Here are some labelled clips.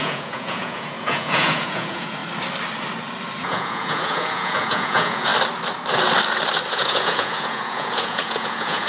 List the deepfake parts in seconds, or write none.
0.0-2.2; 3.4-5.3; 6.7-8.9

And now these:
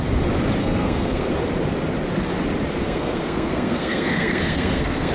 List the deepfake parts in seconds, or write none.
0.6-1.3; 2.8-5.1

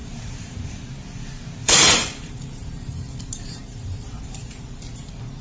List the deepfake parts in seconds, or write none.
0.0-0.6; 1.6-4.8